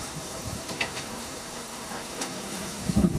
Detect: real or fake fake